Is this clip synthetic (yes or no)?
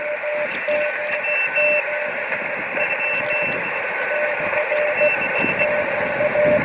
no